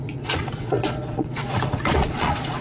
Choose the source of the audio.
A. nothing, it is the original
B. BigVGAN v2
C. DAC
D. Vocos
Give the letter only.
D